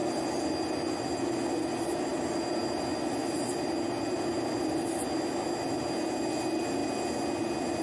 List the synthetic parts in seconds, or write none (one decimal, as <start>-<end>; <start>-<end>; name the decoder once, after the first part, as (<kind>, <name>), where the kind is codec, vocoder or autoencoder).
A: none